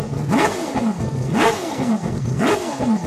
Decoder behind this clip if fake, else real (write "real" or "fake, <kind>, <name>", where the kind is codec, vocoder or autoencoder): fake, codec, SNAC